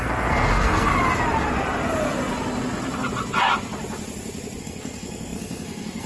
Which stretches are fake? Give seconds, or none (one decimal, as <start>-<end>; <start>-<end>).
0.0-0.9; 4.6-6.1